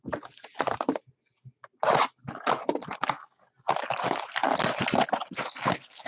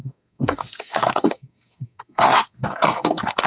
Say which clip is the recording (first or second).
first